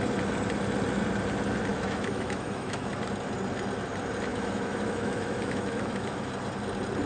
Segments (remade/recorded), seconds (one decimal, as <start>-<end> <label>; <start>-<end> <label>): 0.0-1.7 recorded; 1.7-2.9 remade; 2.9-4.3 recorded; 4.3-6.3 remade; 6.3-7.1 recorded